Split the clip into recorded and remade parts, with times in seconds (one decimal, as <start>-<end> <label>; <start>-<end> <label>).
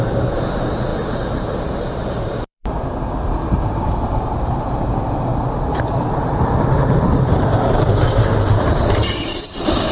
0.0-9.9 remade